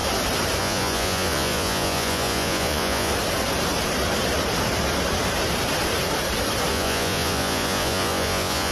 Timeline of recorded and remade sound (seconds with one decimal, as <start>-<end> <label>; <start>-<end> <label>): 0.0-0.6 recorded; 0.6-3.1 remade; 3.1-6.7 recorded; 6.7-8.7 remade